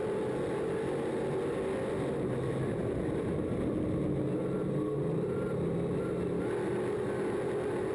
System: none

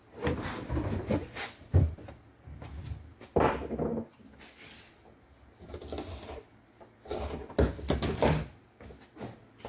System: none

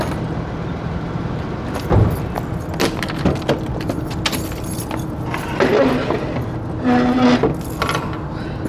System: none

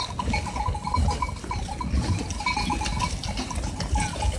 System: none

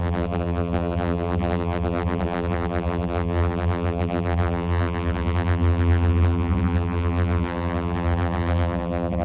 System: vocoder, BigVGAN v2